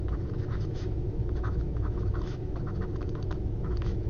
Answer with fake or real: fake